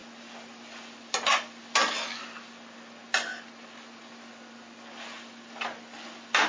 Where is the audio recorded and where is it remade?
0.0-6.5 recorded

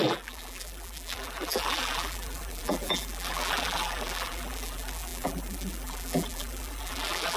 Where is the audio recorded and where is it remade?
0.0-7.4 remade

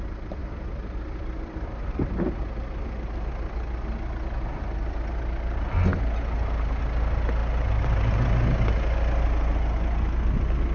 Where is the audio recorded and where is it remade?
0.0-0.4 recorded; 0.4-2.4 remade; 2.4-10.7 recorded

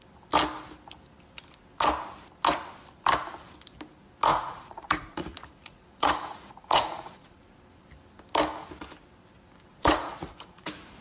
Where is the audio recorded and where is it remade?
0.0-4.3 recorded; 4.3-7.4 remade; 7.4-9.7 recorded; 9.7-11.0 remade